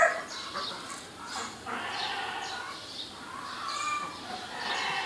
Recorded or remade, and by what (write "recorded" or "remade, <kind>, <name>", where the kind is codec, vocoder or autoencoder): recorded